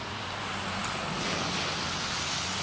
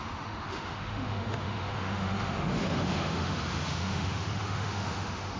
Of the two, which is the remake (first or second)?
second